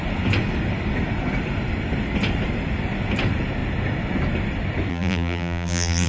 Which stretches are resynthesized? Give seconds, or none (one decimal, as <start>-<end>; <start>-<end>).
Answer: 4.9-6.1